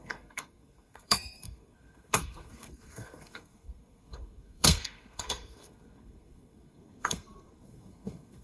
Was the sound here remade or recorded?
remade